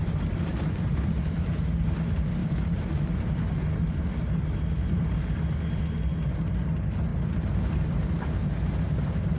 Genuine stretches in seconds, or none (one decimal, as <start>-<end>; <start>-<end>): 0.0-0.5; 1.6-7.1; 8.7-9.4